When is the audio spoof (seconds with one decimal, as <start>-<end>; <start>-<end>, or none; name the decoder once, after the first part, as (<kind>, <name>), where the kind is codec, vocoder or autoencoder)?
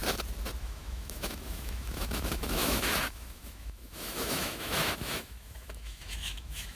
0.6-6.8 (autoencoder, DAC-VAE)